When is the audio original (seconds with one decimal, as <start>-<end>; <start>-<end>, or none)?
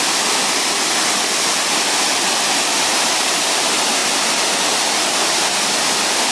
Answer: 0.0-6.3